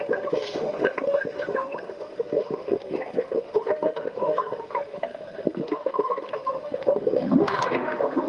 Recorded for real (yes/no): no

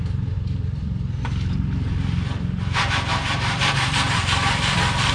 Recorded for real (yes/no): no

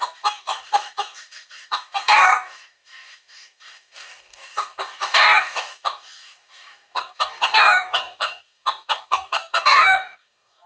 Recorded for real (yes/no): no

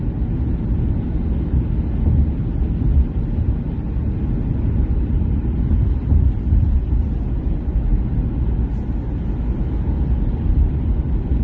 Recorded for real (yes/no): yes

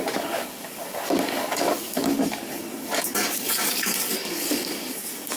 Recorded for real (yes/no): no